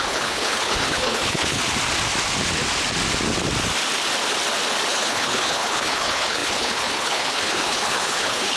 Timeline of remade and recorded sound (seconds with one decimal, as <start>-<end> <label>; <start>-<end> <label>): 0.0-1.6 remade; 1.6-4.9 recorded; 4.9-8.6 remade